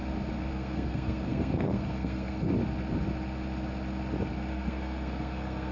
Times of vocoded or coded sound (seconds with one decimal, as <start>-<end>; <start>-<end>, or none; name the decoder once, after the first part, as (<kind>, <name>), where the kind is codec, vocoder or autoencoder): 0.5-2.5 (codec, SNAC); 4.5-5.7